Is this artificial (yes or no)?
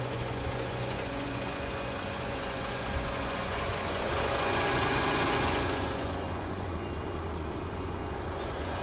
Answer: yes